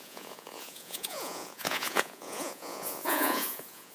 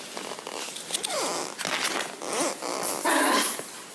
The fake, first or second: first